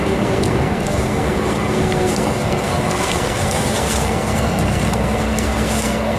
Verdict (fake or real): fake